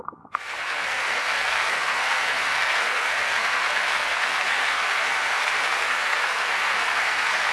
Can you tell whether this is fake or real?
fake